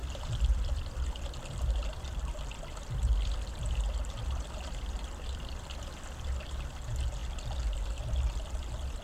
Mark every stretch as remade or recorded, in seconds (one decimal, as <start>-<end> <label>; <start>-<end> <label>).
0.0-3.7 remade; 3.7-7.2 recorded; 7.2-8.0 remade; 8.0-9.0 recorded